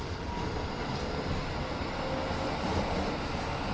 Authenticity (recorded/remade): recorded